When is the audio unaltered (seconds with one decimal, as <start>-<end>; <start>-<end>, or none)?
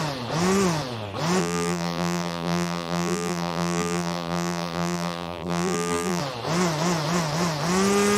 0.0-1.4; 6.2-8.2